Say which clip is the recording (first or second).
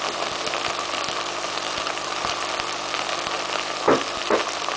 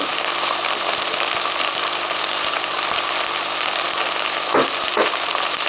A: first